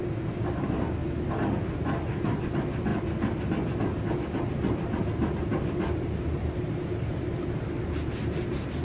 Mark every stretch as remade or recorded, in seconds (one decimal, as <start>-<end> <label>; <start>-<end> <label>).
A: 0.0-2.9 remade; 2.9-4.0 recorded; 4.0-8.8 remade